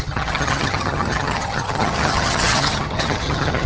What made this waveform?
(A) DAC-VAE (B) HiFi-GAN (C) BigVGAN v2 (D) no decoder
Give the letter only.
B